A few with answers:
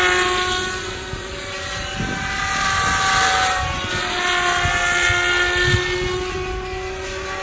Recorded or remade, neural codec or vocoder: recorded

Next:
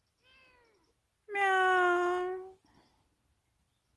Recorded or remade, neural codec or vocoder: recorded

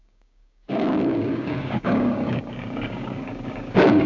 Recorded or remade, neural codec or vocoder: remade, codec, DAC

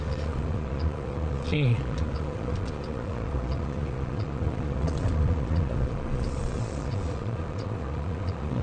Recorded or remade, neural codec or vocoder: remade, vocoder, Vocos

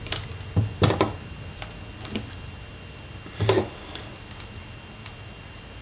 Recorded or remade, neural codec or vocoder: recorded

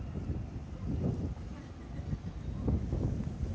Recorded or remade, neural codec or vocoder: recorded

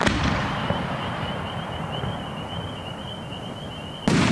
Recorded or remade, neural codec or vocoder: recorded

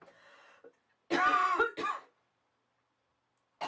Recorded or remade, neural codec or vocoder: recorded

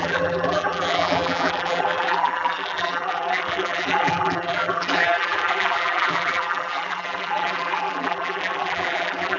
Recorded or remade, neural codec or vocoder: remade, vocoder, BigVGAN v2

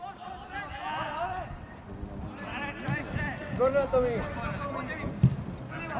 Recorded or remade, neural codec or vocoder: recorded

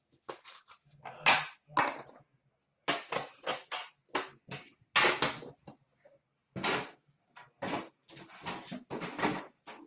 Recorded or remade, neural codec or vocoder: recorded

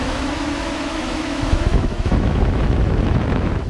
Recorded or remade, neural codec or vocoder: remade, autoencoder, DAC-VAE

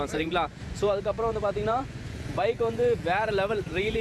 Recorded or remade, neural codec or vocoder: remade, vocoder, Vocos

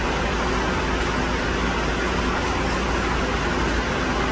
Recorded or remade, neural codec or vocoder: recorded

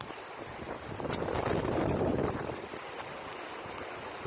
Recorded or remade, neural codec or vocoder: recorded